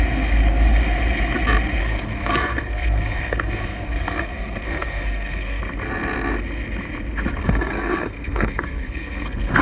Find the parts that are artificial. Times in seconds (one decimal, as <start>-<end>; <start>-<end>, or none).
1.8-5.6; 7.4-9.6